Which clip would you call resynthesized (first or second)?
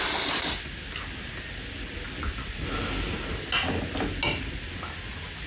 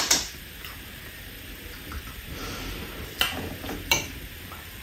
second